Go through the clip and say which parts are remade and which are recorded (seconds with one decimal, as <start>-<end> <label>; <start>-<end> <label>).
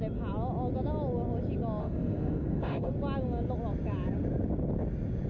0.0-1.8 recorded; 1.8-2.9 remade; 2.9-5.3 recorded